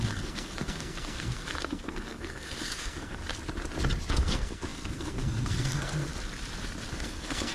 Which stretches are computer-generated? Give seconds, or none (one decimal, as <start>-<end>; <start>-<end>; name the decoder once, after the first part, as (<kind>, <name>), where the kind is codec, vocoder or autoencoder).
0.0-3.2 (codec, SNAC); 4.1-6.1; 6.9-7.5